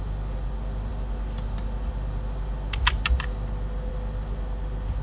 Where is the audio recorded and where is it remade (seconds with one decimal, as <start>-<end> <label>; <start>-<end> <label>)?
0.0-5.0 recorded